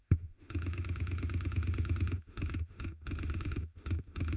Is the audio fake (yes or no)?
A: yes